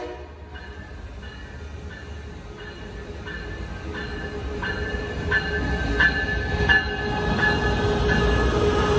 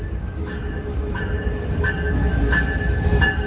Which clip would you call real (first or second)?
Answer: first